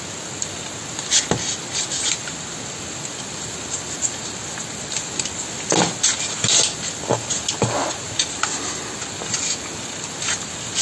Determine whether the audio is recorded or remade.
recorded